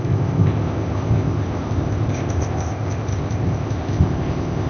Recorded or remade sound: remade